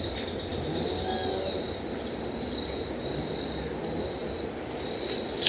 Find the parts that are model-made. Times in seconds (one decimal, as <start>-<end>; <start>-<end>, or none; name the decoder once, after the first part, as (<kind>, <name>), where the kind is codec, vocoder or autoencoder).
none